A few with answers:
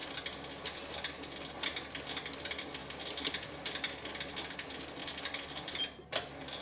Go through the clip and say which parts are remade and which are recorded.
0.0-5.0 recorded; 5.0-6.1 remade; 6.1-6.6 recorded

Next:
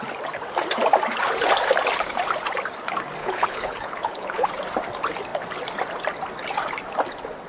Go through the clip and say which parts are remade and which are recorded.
0.0-3.2 recorded; 3.2-4.5 remade; 4.5-7.5 recorded

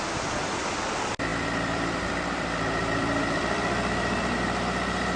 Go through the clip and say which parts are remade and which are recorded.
0.0-1.3 recorded; 1.3-4.4 remade; 4.4-5.2 recorded

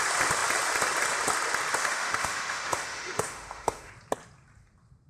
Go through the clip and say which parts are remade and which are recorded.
0.0-1.8 recorded; 1.8-3.9 remade; 3.9-5.1 recorded

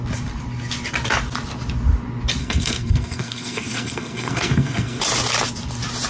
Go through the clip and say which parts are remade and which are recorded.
0.0-2.4 recorded; 2.4-5.0 remade; 5.0-6.1 recorded